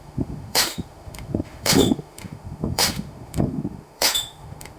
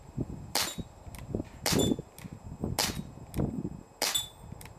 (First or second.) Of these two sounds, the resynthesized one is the first